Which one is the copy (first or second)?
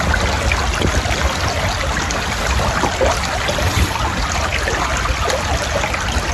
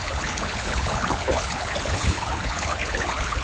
second